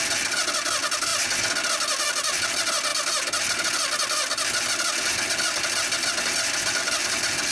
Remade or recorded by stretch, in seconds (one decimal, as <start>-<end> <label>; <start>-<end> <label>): 0.0-7.5 recorded